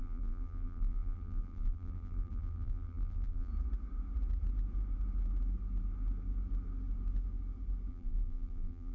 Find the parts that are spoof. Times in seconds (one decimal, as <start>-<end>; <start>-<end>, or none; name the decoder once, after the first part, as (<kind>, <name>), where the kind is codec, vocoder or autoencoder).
0.0-3.5 (vocoder, BigVGAN v2); 7.9-8.9